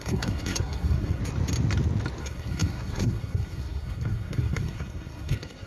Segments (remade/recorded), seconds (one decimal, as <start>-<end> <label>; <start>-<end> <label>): 0.0-1.2 remade; 1.2-2.2 recorded; 2.2-5.7 remade